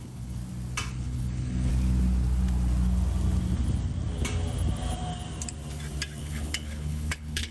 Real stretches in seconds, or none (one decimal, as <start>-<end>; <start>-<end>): 0.4-0.9; 1.7-6.2